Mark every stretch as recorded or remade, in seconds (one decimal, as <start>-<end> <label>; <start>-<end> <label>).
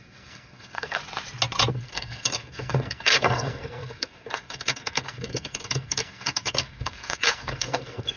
0.0-1.0 remade; 1.0-1.7 recorded; 1.7-8.2 remade